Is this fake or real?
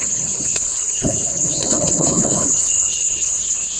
fake